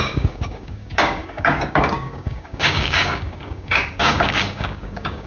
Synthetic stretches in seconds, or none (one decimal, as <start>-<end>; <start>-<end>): 0.0-5.3